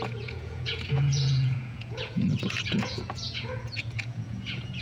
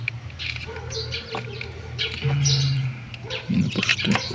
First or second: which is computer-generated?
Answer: first